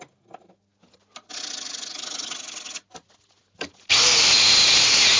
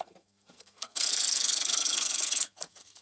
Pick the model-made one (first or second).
second